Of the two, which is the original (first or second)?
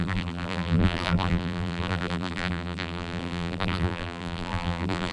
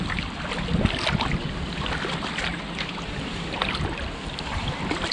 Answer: second